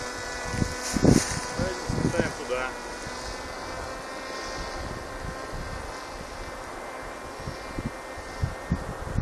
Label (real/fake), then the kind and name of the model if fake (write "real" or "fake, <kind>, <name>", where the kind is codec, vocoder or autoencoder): real